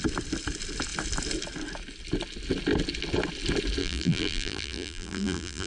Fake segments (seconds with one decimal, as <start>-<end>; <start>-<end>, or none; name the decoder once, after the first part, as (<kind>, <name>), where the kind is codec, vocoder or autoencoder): 3.8-5.7 (vocoder, BigVGAN v2)